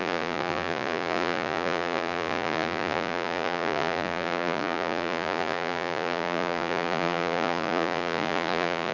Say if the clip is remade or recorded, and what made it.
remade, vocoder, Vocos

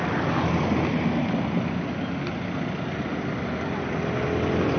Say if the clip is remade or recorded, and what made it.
recorded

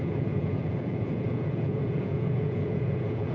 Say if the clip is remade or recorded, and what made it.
remade, vocoder, Vocos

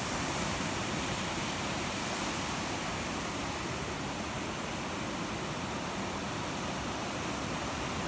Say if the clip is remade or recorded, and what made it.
recorded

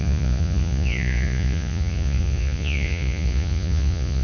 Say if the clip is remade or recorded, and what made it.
remade, vocoder, Vocos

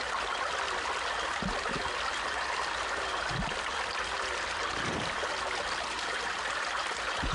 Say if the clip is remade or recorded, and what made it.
recorded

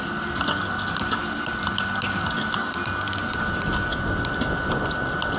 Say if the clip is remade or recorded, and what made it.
recorded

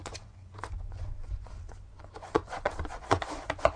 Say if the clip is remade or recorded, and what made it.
remade, vocoder, Vocos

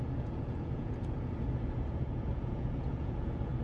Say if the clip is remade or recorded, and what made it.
remade, vocoder, Vocos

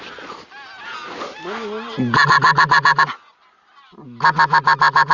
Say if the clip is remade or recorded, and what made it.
recorded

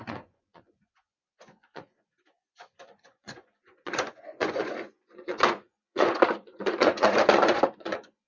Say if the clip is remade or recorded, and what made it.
remade, vocoder, Vocos